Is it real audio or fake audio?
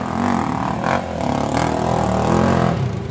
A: real